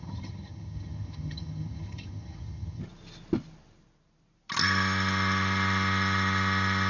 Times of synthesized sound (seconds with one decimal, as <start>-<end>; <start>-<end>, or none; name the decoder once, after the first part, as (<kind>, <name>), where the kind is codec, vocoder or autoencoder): 0.0-2.8 (vocoder, HiFi-GAN)